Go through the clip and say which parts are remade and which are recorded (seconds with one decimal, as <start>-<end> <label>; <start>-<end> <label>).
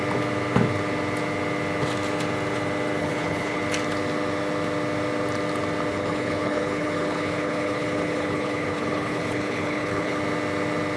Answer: 0.0-3.0 recorded; 3.0-3.6 remade; 3.6-5.9 recorded; 5.9-10.2 remade; 10.2-11.0 recorded